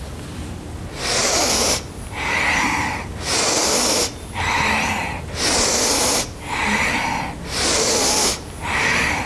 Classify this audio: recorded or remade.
recorded